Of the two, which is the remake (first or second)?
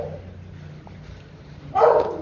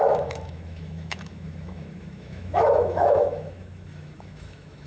second